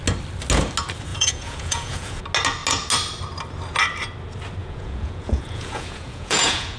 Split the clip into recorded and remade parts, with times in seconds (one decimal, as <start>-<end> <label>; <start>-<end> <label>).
0.0-1.1 recorded; 1.1-2.2 remade; 2.2-4.6 recorded; 4.6-6.8 remade